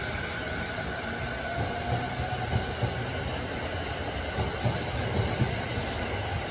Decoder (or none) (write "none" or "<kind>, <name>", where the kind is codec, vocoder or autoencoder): none